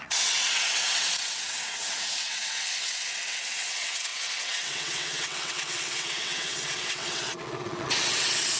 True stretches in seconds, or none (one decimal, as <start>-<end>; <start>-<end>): none